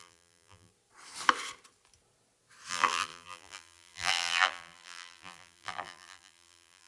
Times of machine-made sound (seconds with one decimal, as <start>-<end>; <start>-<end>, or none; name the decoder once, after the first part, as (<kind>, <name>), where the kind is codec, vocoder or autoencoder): 0.0-0.7 (vocoder, BigVGAN v2); 2.7-6.9